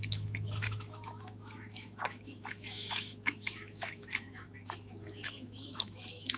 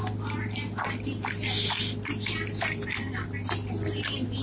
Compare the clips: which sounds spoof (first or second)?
first